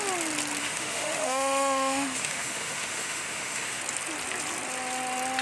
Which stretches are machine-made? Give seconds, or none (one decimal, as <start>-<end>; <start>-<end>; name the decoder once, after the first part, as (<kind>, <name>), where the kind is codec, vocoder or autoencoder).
0.6-3.8 (autoencoder, DAC-VAE)